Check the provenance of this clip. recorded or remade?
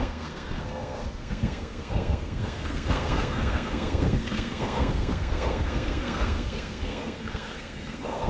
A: remade